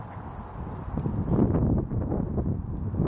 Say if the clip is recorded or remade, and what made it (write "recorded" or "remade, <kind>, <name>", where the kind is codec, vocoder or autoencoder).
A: recorded